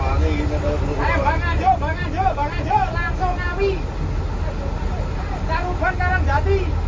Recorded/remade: recorded